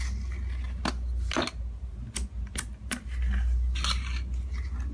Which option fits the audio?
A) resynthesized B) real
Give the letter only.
B